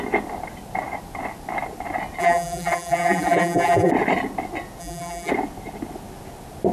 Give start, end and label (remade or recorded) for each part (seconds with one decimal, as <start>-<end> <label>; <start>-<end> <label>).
0.0-2.2 recorded; 2.2-3.9 remade; 3.9-4.8 recorded; 4.8-5.3 remade; 5.3-6.7 recorded